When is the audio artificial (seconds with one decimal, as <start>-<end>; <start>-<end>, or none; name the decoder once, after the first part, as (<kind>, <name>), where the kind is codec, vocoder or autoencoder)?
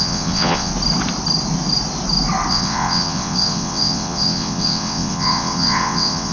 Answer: 0.0-0.7 (vocoder, WaveNeXt); 2.5-6.3